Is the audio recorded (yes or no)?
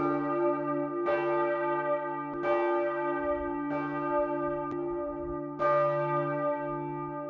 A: yes